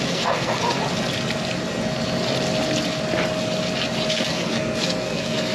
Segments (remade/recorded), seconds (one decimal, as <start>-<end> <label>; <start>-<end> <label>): 0.0-0.8 remade; 0.8-4.1 recorded; 4.1-5.5 remade